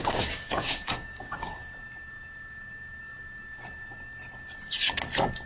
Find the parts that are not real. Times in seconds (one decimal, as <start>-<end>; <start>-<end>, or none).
0.0-1.5